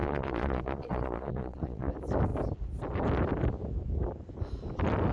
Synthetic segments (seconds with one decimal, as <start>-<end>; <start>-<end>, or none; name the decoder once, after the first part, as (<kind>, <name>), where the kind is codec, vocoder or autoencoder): 0.0-1.9 (vocoder, Vocos)